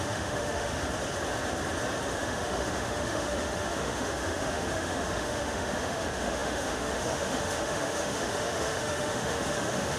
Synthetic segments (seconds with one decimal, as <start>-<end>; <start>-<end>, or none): 0.0-0.8; 2.1-10.0